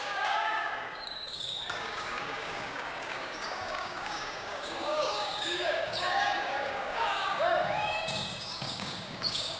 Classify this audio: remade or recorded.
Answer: remade